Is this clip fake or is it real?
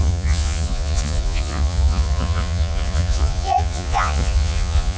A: fake